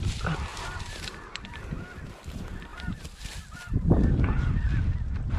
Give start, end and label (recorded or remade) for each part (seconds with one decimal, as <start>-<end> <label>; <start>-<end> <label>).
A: 0.0-5.4 remade